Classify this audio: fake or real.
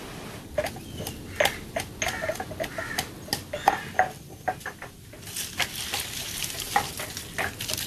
real